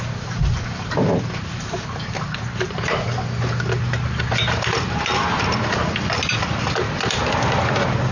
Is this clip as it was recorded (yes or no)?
yes